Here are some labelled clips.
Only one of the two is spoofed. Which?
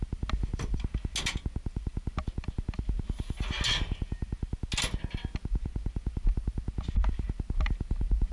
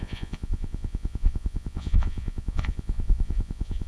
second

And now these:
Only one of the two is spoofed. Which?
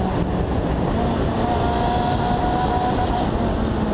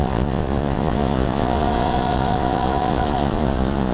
second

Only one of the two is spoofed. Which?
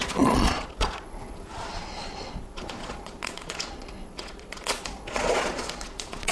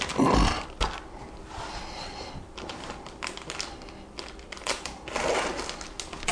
first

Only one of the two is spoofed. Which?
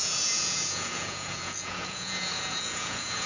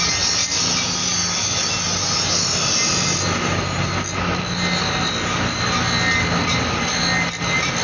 first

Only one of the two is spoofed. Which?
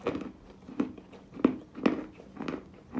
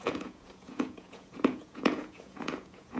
second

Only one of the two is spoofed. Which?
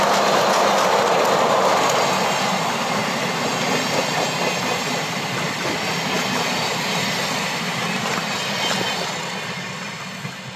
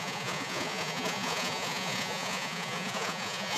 second